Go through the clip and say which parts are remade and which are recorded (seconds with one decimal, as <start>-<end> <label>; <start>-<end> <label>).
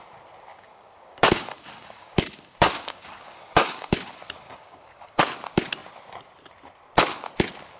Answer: 0.0-0.5 recorded; 0.5-5.2 remade; 5.2-7.8 recorded